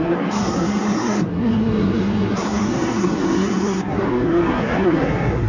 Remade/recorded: remade